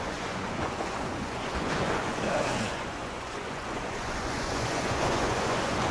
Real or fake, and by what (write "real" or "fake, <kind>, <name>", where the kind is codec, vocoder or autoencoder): fake, vocoder, Vocos